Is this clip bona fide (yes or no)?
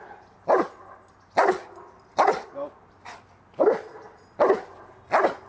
yes